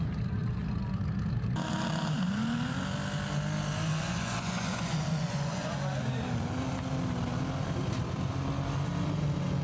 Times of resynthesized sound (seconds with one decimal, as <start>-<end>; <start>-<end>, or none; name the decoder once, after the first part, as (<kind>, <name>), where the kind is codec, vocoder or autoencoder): 3.9-5.7 (vocoder, Vocos)